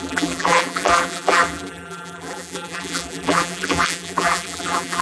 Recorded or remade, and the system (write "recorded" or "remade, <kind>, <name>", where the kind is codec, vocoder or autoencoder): remade, vocoder, BigVGAN v2